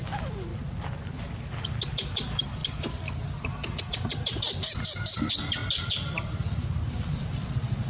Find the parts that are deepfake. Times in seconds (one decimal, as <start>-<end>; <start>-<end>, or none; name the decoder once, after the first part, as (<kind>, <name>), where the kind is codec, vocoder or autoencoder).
none